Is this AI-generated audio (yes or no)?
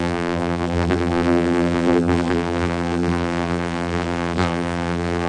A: yes